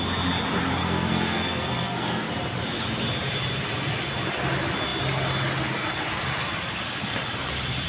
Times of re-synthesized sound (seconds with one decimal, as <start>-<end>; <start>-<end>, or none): 0.8-2.3